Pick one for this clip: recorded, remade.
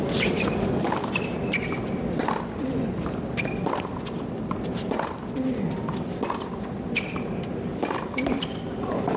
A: recorded